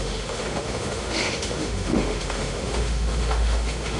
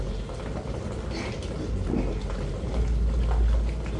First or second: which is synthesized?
first